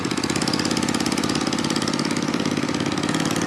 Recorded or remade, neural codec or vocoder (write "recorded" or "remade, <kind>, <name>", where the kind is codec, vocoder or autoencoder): recorded